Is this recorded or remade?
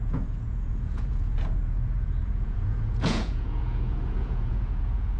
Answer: remade